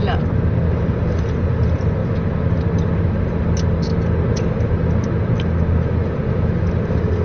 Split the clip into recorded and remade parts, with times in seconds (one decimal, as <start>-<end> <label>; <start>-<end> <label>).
0.0-1.6 remade; 1.6-7.2 recorded